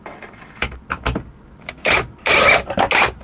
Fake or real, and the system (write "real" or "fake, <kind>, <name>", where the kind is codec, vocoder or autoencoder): real